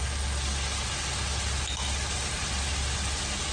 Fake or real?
real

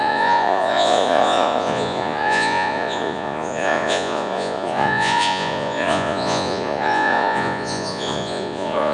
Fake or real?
fake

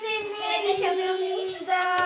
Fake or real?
fake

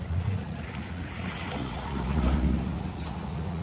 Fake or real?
fake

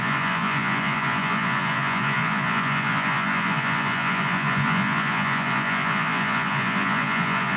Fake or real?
fake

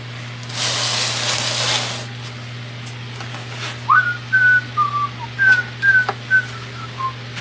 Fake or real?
real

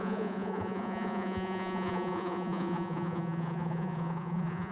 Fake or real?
fake